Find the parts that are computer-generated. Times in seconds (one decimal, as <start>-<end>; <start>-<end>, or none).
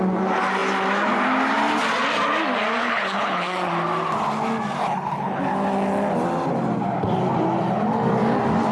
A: 2.8-3.7; 4.8-5.4